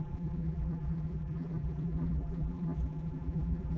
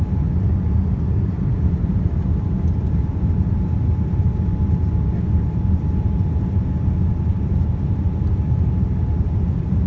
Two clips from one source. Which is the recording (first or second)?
second